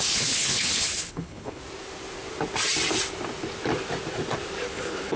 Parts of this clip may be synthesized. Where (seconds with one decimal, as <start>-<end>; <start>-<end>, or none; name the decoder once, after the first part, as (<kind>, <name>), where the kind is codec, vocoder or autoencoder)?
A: 0.0-1.6 (codec, HILCodec); 4.7-5.2